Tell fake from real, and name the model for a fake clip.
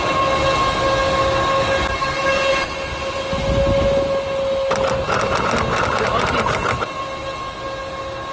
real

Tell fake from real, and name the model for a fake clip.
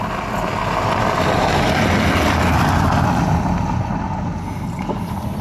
real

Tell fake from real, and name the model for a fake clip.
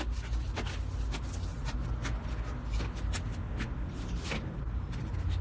real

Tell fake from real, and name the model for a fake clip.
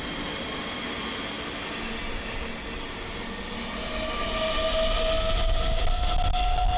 real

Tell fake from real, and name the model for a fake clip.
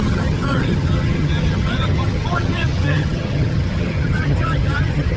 fake, vocoder, HiFi-GAN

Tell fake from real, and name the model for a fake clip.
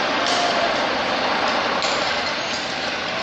real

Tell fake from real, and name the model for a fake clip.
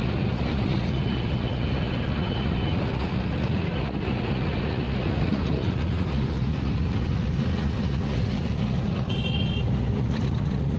fake, vocoder, Vocos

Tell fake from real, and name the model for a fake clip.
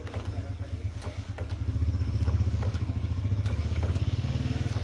fake, codec, DAC